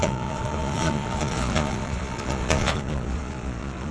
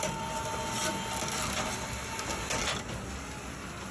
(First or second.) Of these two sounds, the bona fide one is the second